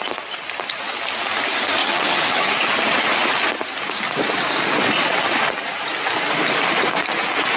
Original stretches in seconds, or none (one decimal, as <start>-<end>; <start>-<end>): 0.0-1.8; 2.5-7.6